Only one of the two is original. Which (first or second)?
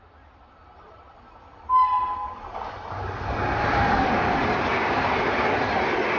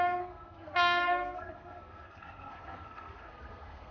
first